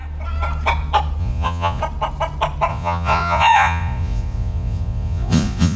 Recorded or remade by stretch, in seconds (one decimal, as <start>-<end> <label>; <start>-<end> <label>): 0.0-1.2 recorded; 1.2-1.8 remade; 1.8-2.7 recorded; 2.7-5.8 remade